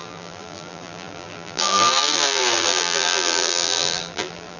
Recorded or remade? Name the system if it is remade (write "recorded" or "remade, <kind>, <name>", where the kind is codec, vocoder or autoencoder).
remade, vocoder, BigVGAN v2